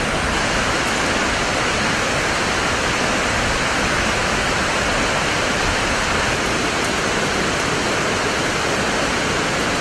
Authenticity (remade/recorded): recorded